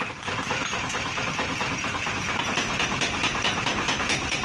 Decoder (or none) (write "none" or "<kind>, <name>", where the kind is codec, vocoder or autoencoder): vocoder, BigVGAN v2